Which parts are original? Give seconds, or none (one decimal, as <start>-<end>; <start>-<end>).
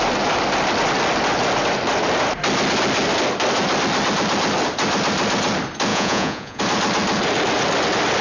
0.0-5.9; 6.6-8.2